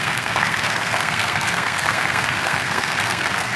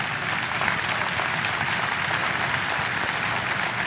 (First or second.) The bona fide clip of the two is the second